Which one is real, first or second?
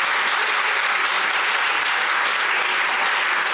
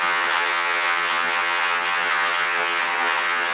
first